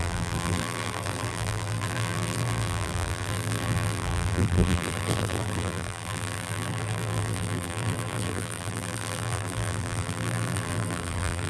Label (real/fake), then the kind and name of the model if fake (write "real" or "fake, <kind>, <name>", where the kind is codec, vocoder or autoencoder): fake, vocoder, BigVGAN v2